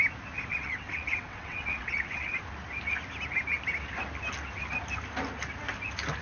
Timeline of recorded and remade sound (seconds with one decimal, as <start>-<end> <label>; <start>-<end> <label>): 0.0-0.5 recorded; 0.5-2.4 remade; 2.4-6.2 recorded